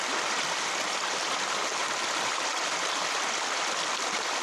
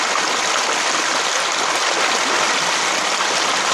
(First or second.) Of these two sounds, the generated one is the first